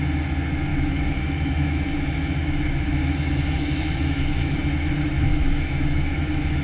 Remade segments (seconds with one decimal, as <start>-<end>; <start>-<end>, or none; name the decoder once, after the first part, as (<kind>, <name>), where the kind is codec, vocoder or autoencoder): 0.7-4.7 (autoencoder, DAC-VAE); 5.3-6.6